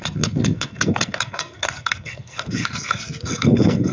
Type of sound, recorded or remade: remade